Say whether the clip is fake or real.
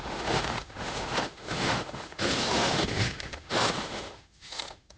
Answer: fake